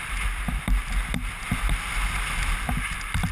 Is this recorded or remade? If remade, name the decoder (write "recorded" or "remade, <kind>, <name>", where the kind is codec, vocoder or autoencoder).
recorded